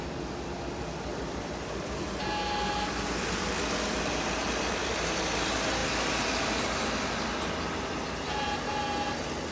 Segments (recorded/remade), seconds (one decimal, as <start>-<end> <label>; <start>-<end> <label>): 0.0-1.1 recorded; 1.1-2.2 remade; 2.2-4.4 recorded; 4.4-5.2 remade; 5.2-9.5 recorded